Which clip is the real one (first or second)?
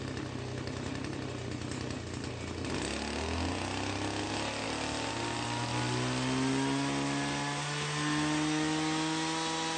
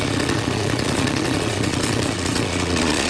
first